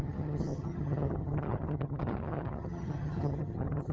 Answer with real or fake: fake